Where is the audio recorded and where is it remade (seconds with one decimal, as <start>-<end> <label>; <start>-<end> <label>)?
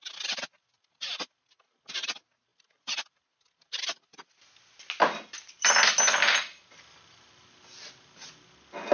0.0-8.9 recorded